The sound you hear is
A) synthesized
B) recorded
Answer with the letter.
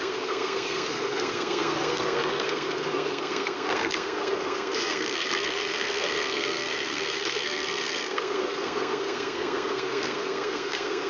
A